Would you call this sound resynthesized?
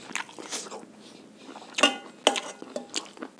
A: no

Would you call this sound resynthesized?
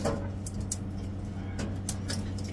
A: no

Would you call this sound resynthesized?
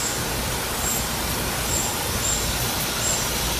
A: no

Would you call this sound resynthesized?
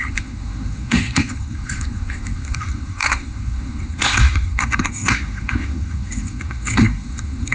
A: yes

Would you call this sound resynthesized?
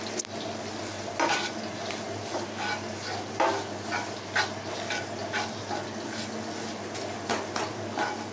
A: no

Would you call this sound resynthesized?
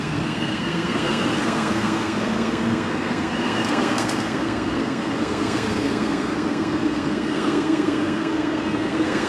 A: yes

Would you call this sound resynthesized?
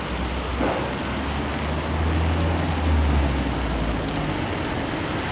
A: no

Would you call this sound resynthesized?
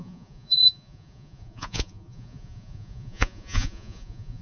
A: yes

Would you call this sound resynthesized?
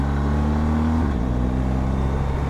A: no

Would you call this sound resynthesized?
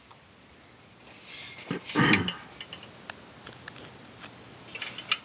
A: no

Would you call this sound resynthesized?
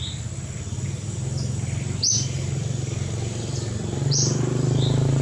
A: no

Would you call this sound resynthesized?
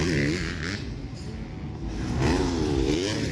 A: no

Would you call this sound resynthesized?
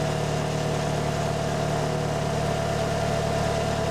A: no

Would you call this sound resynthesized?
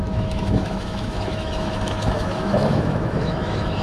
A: yes